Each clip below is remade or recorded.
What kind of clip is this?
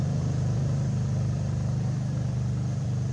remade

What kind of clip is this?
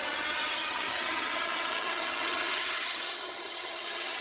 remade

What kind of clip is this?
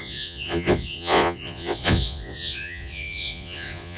remade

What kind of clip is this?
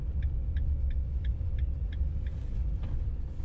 recorded